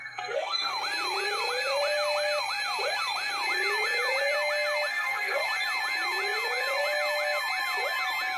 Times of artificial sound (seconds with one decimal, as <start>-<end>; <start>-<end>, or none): 0.0-0.7; 4.9-5.4